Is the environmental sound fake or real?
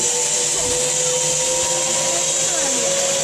real